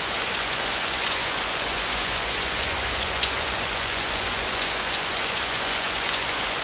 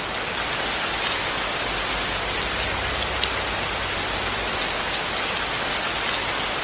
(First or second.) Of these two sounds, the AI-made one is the first